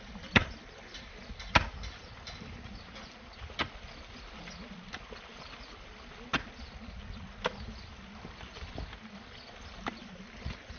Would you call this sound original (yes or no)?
yes